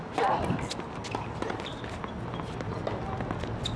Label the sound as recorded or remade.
recorded